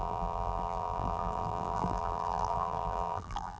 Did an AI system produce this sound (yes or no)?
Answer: yes